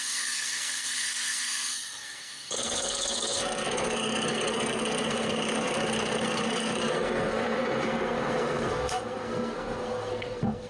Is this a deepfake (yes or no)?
yes